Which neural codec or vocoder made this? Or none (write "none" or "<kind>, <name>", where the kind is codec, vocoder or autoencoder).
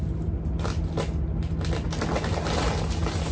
none